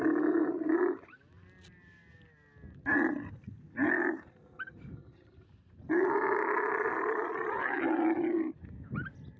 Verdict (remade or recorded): recorded